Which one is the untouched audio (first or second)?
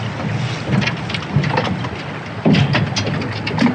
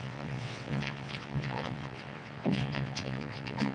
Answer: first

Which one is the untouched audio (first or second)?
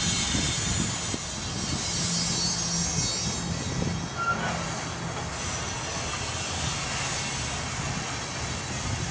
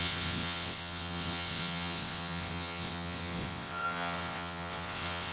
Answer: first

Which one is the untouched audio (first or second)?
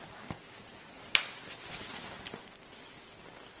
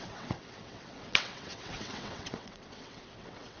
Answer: first